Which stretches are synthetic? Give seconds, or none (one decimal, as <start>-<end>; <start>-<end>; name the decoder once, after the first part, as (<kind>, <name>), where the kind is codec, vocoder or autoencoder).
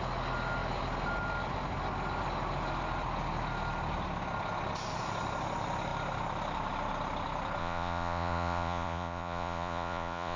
7.6-10.4 (vocoder, Vocos)